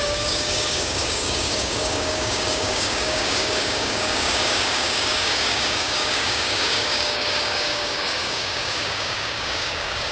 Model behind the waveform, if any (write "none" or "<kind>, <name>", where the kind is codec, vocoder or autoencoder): codec, DAC